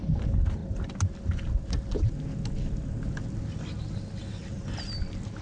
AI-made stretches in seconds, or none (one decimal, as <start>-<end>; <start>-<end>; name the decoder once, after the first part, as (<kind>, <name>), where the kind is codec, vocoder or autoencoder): none